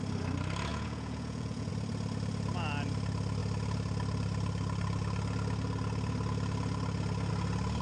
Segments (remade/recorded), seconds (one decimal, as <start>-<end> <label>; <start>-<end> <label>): 0.0-0.7 recorded; 0.7-1.7 remade; 1.7-7.8 recorded

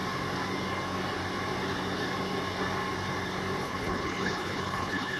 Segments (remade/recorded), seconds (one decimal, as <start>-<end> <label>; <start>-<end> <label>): 0.0-3.6 recorded; 3.6-5.2 remade

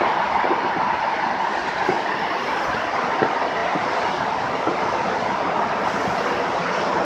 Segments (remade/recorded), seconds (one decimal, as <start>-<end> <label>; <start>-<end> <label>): 0.0-7.0 recorded

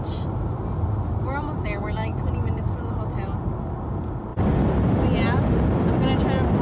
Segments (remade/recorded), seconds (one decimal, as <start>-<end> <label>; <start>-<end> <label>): 0.0-6.6 recorded